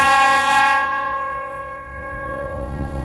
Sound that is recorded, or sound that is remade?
remade